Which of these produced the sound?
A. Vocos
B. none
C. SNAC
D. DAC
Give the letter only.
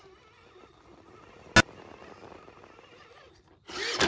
B